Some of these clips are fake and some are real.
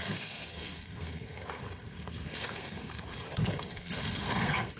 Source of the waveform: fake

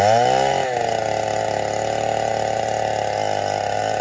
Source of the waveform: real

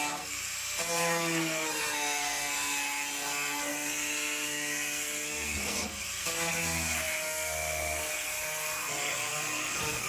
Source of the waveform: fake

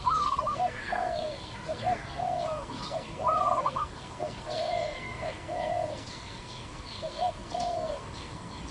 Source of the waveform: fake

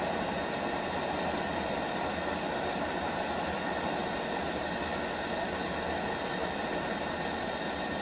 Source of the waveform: real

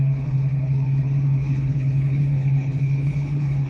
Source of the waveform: fake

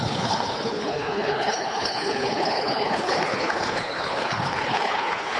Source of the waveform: fake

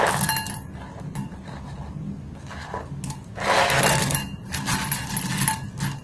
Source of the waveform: real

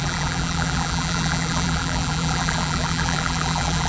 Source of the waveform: fake